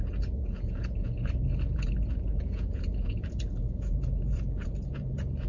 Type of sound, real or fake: fake